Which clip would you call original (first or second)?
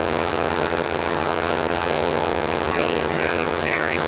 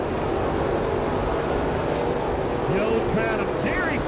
second